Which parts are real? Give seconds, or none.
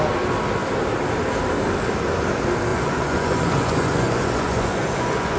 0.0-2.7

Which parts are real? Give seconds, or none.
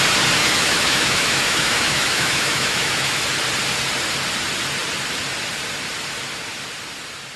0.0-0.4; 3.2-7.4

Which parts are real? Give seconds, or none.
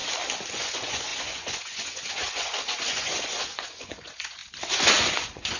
0.0-0.5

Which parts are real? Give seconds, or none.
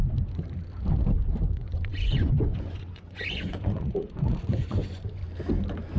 0.0-1.5; 5.2-6.0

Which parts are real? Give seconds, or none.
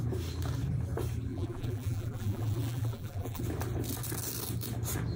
0.0-1.3; 3.4-5.2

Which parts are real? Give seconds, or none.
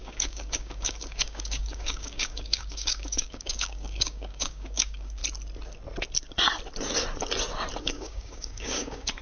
5.2-7.8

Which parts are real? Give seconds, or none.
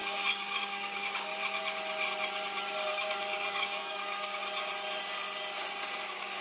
1.3-2.9; 4.4-6.0